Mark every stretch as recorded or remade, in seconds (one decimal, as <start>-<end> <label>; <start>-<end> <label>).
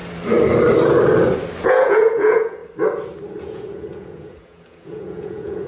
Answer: 0.0-1.6 recorded; 1.6-2.6 remade; 2.6-3.4 recorded; 3.4-5.7 remade